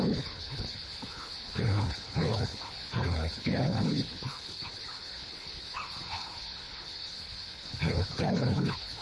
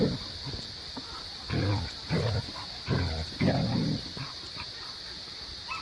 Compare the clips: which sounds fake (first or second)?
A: first